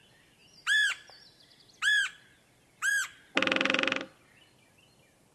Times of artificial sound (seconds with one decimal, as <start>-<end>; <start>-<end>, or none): none